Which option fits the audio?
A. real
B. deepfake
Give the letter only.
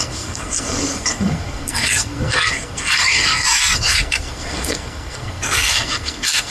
B